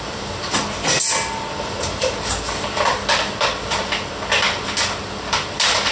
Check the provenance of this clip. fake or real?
real